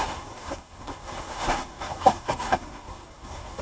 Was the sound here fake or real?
fake